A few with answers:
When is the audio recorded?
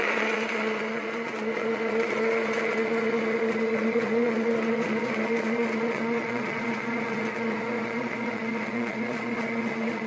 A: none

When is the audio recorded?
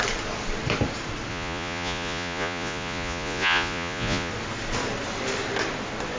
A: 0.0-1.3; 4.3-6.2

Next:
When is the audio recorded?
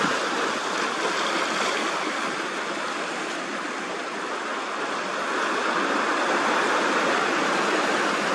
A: 0.0-8.3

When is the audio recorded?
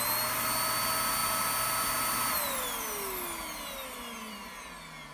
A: 0.0-5.1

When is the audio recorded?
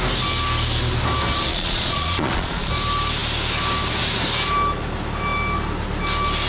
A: 0.0-1.5; 2.7-6.5